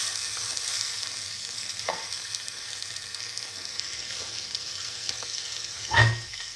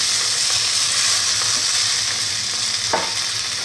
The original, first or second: second